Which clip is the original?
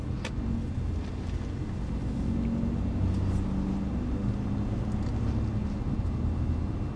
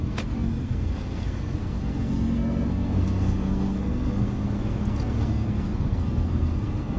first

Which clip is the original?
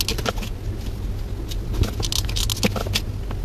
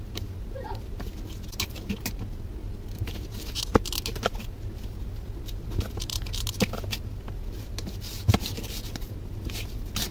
first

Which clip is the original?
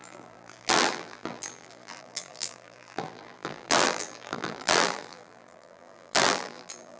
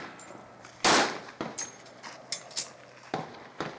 second